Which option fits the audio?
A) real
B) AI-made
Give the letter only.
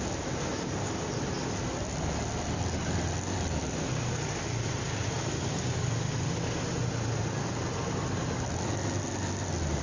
A